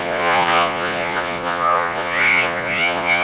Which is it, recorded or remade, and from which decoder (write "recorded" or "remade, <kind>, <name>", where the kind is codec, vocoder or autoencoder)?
remade, vocoder, Vocos